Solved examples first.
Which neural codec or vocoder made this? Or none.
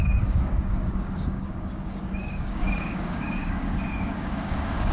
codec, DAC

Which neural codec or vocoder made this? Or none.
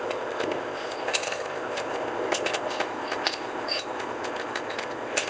codec, ZipCodec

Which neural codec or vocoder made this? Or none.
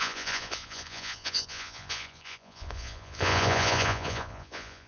vocoder, Vocos